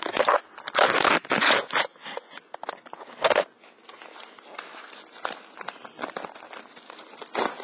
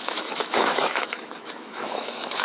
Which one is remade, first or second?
second